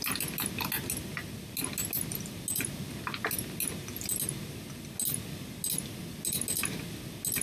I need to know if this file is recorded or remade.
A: recorded